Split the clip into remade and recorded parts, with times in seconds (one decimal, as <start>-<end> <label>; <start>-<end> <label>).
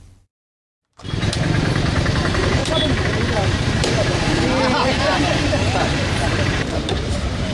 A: 0.0-7.5 remade